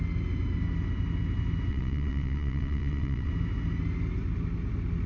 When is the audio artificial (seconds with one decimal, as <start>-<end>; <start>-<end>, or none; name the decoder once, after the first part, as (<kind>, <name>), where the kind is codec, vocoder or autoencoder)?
1.7-3.3 (vocoder, WaveNeXt)